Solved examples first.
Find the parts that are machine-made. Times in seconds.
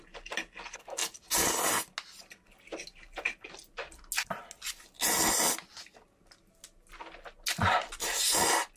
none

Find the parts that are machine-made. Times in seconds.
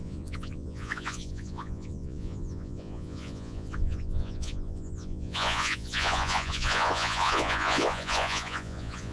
0.0-9.1 (vocoder, Vocos)